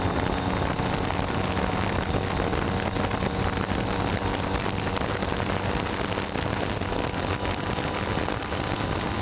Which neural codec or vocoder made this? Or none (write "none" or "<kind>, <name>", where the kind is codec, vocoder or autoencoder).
none